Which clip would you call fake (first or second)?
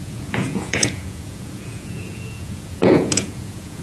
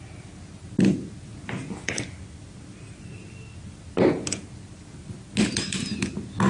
first